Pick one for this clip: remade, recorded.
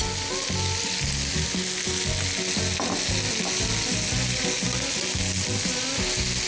recorded